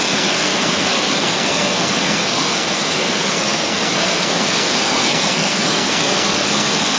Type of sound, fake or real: fake